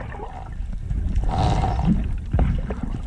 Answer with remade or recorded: recorded